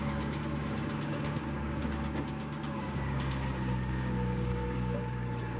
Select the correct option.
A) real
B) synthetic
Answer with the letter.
B